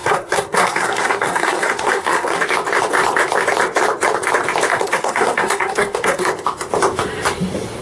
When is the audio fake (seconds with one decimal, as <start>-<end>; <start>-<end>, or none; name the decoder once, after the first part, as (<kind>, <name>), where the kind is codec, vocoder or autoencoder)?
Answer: 0.0-2.4 (codec, SNAC); 4.7-6.3